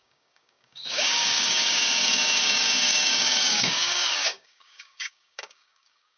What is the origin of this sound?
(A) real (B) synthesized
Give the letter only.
B